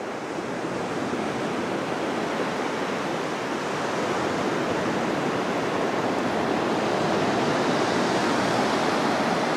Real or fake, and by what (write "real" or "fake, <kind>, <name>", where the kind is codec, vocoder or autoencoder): real